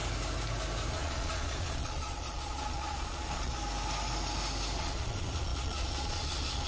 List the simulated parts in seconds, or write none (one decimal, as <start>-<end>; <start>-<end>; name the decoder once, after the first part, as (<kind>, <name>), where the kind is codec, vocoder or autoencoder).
0.9-3.6 (vocoder, Vocos); 4.8-6.7